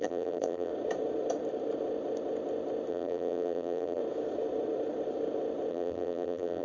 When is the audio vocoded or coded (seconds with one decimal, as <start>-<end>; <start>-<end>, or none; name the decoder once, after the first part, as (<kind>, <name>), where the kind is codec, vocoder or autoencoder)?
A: 0.0-0.7 (vocoder, BigVGAN v2); 2.9-4.0; 5.7-6.6